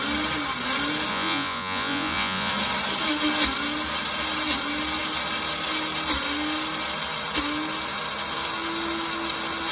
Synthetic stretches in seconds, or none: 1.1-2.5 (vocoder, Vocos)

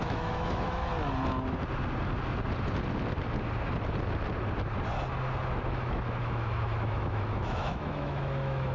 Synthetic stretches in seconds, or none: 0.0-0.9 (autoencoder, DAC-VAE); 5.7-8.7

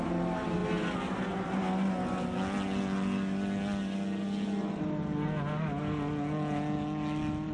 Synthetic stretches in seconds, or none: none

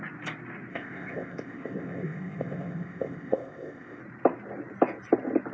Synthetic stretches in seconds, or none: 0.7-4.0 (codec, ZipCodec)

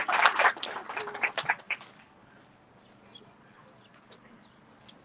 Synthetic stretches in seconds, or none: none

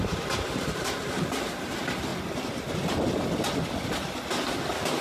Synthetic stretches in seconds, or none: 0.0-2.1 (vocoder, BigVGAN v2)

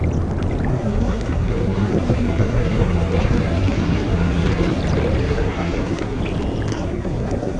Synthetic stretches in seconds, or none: 0.7-4.8 (codec, SNAC); 5.2-6.2; 6.7-7.6

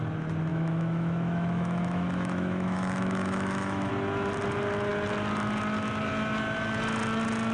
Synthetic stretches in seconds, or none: 0.5-3.9 (autoencoder, DAC-VAE)